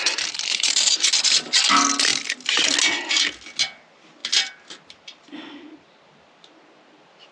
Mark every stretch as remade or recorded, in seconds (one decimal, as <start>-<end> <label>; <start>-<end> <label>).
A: 0.0-0.5 recorded; 0.5-1.1 remade; 1.1-7.3 recorded